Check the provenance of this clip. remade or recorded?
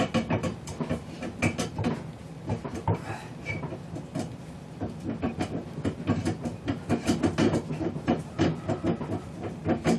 recorded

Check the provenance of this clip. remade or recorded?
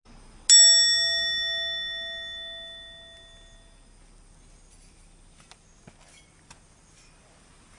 recorded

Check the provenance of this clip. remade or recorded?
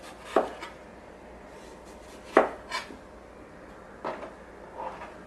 recorded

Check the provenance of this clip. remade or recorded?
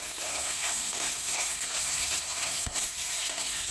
remade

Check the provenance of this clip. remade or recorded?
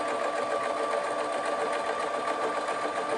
recorded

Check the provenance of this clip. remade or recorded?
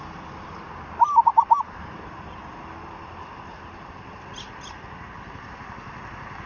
recorded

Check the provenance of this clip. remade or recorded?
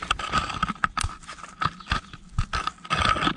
recorded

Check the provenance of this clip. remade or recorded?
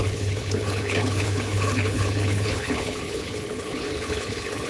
remade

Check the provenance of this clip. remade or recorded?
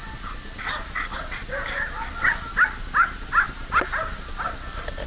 recorded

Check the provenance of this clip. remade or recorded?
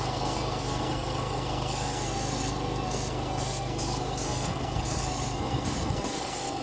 remade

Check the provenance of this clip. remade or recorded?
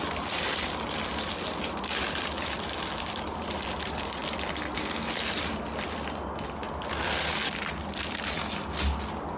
recorded